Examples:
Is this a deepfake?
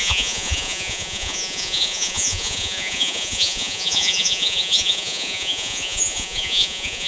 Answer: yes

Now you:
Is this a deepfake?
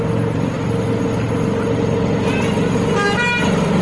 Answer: no